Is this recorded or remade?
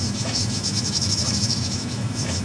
remade